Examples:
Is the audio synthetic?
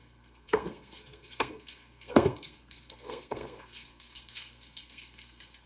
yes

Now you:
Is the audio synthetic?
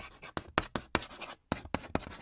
no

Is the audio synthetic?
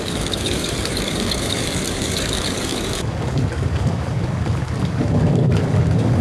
yes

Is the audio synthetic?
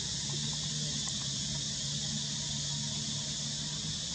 no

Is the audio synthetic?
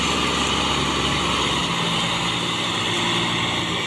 no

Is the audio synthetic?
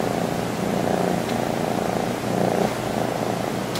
no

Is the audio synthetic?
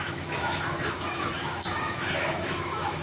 yes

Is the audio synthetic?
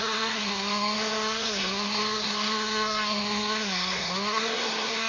yes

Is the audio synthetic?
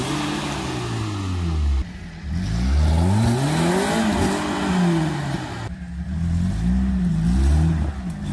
no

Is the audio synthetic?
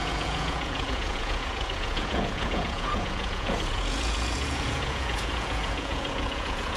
yes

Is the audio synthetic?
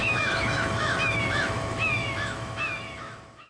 yes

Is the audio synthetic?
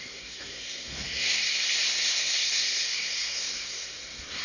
yes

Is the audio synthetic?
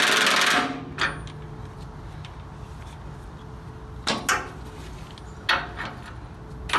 no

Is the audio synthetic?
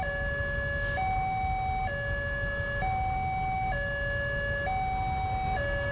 no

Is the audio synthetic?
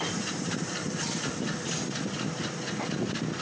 yes